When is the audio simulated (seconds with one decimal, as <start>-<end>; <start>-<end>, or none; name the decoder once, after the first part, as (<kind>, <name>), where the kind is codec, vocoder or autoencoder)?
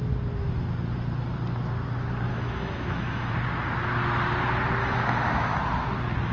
2.3-3.3 (autoencoder, DAC-VAE); 4.8-5.6